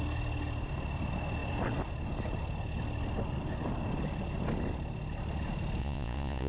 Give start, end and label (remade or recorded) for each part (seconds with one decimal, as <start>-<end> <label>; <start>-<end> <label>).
0.0-5.8 recorded; 5.8-6.5 remade